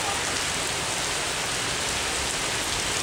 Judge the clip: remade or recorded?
recorded